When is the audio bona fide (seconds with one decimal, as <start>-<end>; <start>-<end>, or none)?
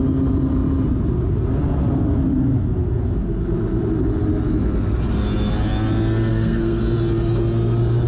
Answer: 0.0-6.3; 6.8-8.1